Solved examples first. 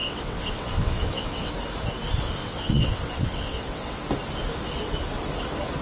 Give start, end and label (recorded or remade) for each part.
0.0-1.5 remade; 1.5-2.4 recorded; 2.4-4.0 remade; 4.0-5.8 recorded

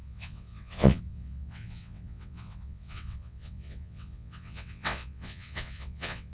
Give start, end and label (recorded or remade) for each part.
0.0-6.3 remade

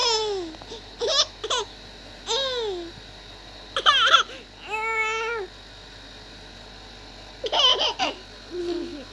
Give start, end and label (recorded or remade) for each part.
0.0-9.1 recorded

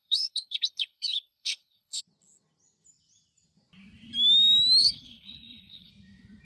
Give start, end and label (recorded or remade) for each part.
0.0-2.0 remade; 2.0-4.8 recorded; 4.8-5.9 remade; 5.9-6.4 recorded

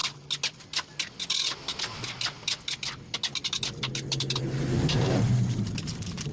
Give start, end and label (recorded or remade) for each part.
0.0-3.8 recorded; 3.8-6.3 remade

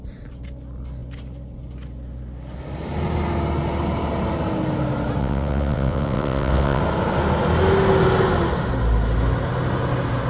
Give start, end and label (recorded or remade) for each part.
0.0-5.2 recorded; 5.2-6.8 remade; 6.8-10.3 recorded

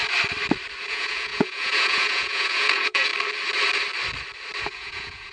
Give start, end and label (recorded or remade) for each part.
0.0-0.8 recorded; 0.8-3.1 remade; 3.1-4.6 recorded; 4.6-5.3 remade